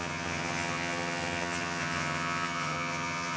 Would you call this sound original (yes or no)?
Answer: no